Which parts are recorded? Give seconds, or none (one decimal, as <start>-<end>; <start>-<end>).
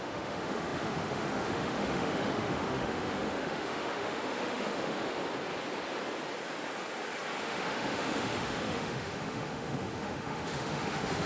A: 5.2-7.4